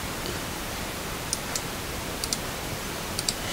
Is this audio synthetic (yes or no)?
yes